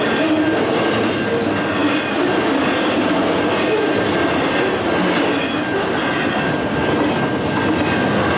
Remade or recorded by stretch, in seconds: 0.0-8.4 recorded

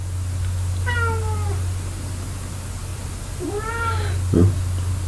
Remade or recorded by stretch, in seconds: 0.0-2.9 recorded; 2.9-3.7 remade; 3.7-5.1 recorded

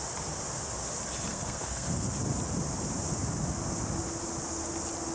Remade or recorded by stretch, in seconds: 0.0-1.3 recorded; 1.3-2.1 remade; 2.1-5.1 recorded